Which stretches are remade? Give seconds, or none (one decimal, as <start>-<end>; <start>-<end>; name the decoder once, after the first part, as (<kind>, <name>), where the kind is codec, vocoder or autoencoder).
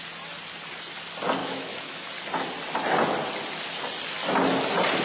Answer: 1.4-2.1 (autoencoder, DAC-VAE)